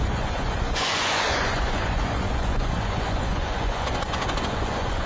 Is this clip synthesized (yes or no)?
yes